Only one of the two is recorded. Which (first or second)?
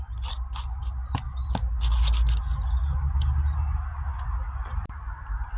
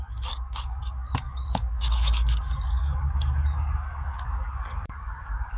first